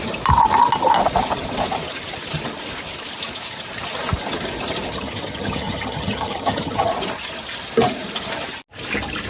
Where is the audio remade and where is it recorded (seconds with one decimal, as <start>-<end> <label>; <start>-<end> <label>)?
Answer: 0.0-4.9 recorded; 4.9-6.9 remade; 6.9-9.3 recorded